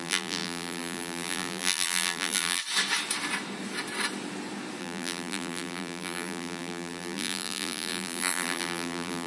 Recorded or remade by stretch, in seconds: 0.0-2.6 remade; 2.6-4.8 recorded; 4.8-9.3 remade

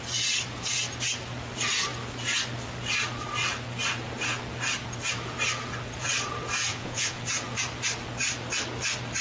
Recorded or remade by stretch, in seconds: 0.0-6.7 recorded; 6.7-7.2 remade; 7.2-9.2 recorded

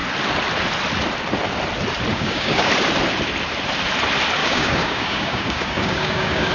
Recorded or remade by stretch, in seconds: 0.0-2.1 recorded; 2.1-2.7 remade; 2.7-4.4 recorded; 4.4-6.5 remade